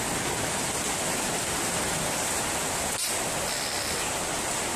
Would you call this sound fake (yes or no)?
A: no